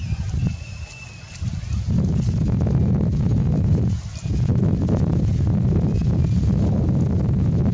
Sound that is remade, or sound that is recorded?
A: recorded